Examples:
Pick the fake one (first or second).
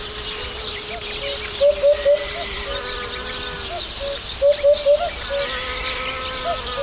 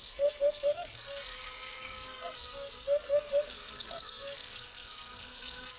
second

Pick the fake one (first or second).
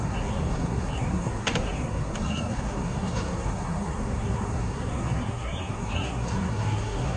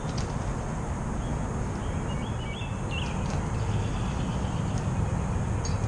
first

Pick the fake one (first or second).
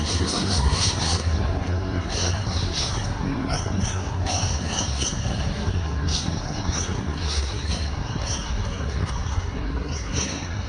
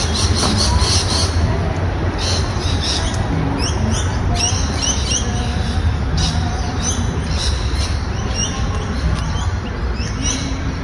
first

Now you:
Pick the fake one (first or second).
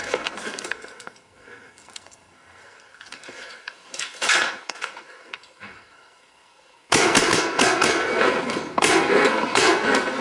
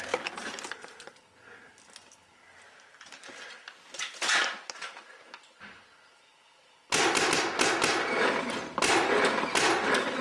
first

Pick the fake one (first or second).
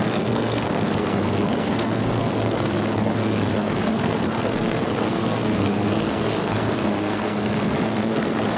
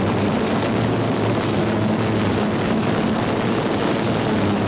first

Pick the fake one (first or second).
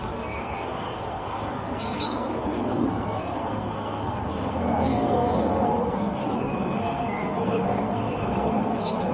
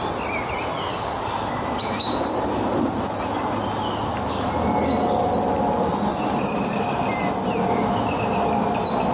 first